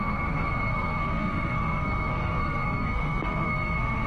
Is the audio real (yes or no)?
no